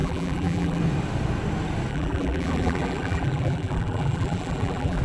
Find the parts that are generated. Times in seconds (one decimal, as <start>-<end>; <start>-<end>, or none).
0.0-0.8; 1.9-5.0